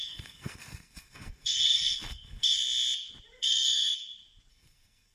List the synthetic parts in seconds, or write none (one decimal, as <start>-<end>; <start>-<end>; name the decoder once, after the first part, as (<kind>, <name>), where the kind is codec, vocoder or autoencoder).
0.0-2.6 (codec, SNAC); 3.4-3.9; 4.5-5.1